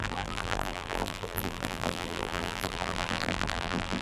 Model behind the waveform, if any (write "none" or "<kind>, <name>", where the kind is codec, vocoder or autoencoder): vocoder, BigVGAN v2